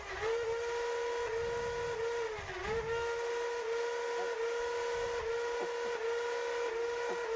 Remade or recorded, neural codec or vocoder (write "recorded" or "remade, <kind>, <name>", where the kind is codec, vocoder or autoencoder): recorded